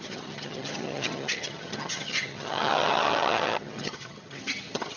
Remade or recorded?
remade